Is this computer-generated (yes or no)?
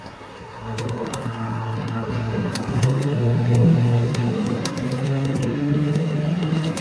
yes